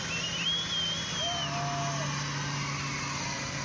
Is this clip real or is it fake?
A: real